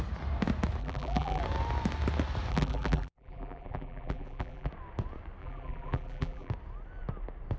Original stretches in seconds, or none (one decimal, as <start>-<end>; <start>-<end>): 0.0-0.8; 1.4-2.5; 4.7-5.4; 6.5-7.6